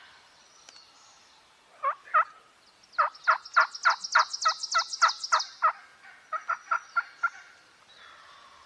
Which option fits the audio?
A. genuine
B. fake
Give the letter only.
A